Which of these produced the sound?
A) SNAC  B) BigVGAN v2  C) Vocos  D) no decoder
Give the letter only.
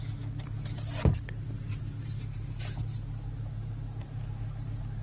D